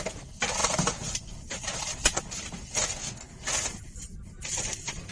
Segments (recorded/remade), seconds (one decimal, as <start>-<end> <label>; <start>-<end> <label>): 0.0-0.6 recorded; 0.6-2.6 remade; 2.6-5.1 recorded